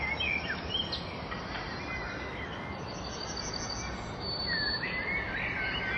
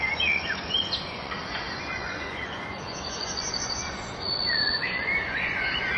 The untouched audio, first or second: first